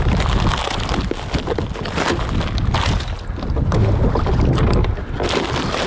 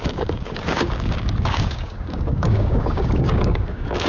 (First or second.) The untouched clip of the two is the first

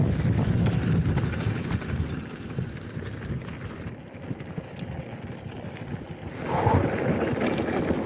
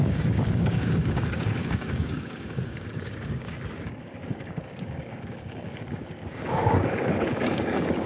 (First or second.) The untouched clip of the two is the first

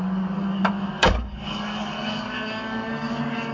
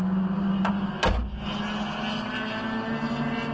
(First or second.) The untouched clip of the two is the second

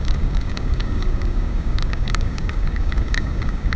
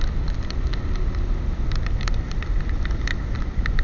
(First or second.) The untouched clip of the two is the second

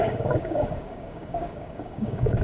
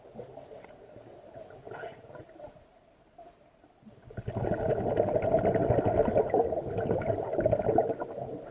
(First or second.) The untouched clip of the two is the second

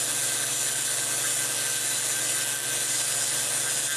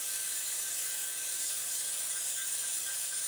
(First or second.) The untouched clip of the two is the first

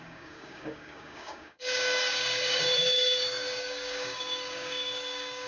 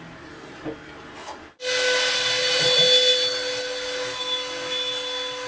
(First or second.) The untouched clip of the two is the second